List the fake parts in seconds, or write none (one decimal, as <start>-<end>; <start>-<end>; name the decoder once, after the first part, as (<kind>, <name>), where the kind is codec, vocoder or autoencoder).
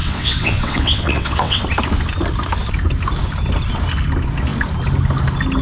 0.0-1.6 (vocoder, WaveNeXt)